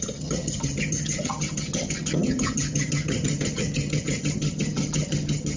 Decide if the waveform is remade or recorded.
remade